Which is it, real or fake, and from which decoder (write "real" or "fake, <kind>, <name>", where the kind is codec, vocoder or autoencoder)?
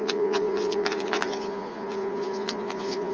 fake, vocoder, Vocos